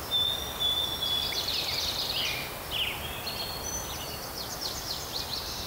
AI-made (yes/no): no